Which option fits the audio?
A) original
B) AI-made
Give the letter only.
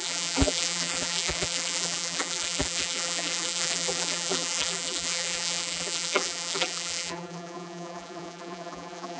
B